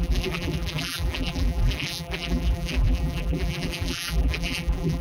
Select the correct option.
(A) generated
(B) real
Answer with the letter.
A